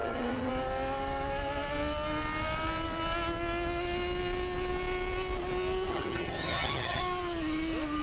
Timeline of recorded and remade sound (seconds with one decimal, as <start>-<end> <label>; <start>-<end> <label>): 0.0-0.5 remade; 0.5-5.9 recorded; 5.9-7.0 remade; 7.0-8.0 recorded